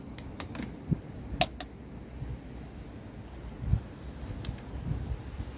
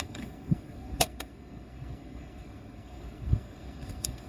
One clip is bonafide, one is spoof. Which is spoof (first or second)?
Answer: second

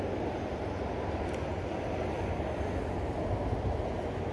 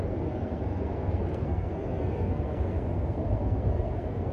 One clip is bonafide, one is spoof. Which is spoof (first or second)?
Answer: second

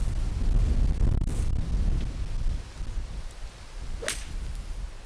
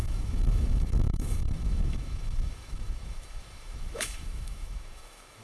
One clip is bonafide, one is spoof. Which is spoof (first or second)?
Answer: second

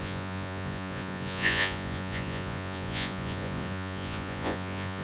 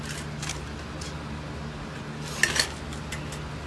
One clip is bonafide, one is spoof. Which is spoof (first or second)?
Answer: first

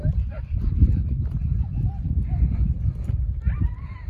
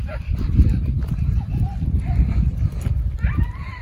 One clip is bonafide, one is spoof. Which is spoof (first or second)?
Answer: second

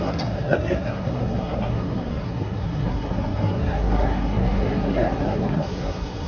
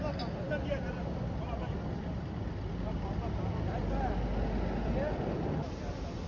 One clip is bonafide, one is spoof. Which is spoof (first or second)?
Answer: first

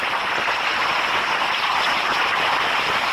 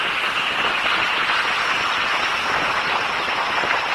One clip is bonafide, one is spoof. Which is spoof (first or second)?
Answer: first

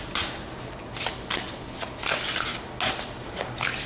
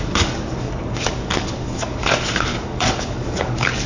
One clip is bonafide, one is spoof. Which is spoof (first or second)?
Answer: second